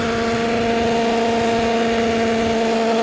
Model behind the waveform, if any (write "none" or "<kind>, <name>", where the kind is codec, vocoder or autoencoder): none